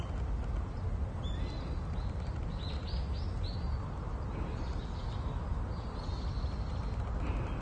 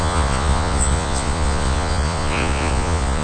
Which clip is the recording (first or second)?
first